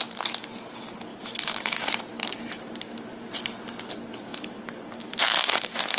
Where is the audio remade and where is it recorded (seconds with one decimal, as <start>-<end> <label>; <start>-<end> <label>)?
0.0-1.1 recorded; 1.1-1.9 remade; 1.9-4.3 recorded; 4.3-6.0 remade